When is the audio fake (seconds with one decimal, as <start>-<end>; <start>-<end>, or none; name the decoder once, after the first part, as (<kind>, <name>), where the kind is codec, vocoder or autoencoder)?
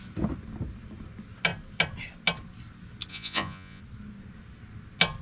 3.1-3.8 (vocoder, Vocos)